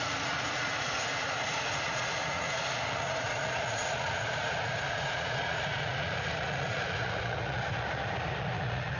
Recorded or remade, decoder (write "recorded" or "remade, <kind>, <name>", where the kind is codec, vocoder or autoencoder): remade, vocoder, Vocos